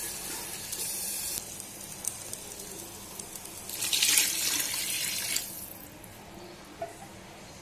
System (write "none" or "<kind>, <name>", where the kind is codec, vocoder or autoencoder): none